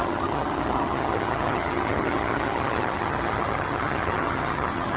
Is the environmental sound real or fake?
fake